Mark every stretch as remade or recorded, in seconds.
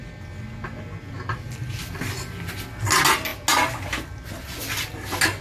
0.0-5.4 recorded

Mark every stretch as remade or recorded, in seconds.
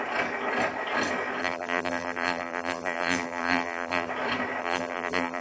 0.0-1.4 recorded; 1.4-4.1 remade; 4.1-4.6 recorded; 4.6-5.4 remade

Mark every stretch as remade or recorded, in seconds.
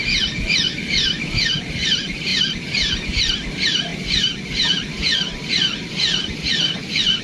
0.0-2.3 recorded; 2.3-3.1 remade; 3.1-7.2 recorded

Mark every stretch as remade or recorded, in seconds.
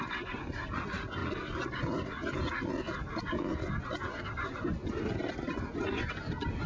0.0-1.2 remade; 1.2-4.3 recorded; 4.3-6.7 remade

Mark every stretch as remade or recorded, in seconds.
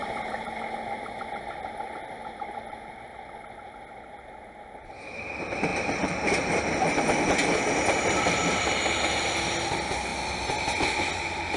0.0-4.9 remade; 4.9-5.7 recorded; 5.7-6.6 remade; 6.6-11.6 recorded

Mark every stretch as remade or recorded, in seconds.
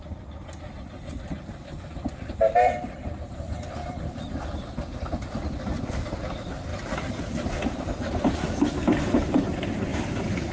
0.0-10.5 remade